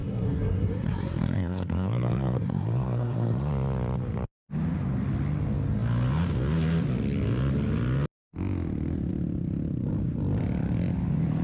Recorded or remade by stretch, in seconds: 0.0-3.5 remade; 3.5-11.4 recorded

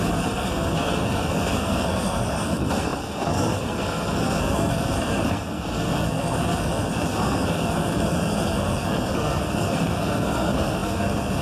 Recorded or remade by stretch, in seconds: 0.0-11.4 remade

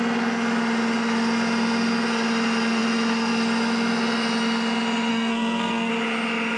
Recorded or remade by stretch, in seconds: 0.0-5.1 recorded; 5.1-5.9 remade; 5.9-6.6 recorded

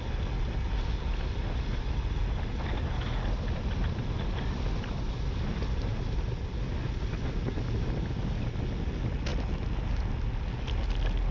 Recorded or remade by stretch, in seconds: 0.0-11.3 recorded

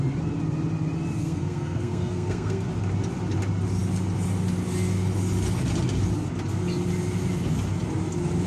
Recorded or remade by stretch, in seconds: 0.0-1.2 recorded; 1.2-2.7 remade; 2.7-8.5 recorded